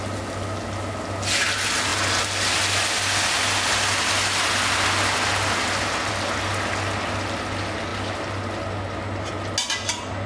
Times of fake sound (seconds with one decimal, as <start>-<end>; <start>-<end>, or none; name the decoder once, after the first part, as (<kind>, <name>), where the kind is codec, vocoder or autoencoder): none